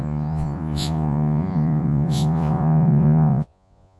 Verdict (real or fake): fake